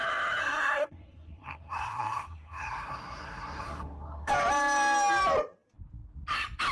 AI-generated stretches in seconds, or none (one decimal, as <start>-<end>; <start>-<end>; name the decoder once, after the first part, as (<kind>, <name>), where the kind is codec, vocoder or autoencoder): 0.4-4.3 (codec, SNAC)